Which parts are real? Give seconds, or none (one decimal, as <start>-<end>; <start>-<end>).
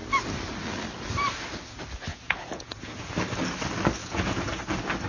0.0-2.1; 3.1-4.0; 4.6-5.1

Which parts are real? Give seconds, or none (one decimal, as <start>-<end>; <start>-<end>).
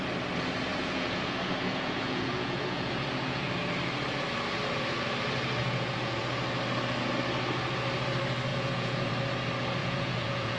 0.0-0.7; 3.5-5.6; 6.2-8.5; 9.1-9.8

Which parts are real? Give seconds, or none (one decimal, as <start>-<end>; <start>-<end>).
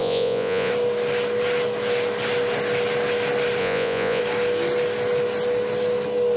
0.7-3.6; 4.2-6.4